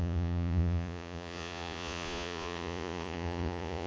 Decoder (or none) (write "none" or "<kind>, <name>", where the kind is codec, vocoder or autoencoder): vocoder, Vocos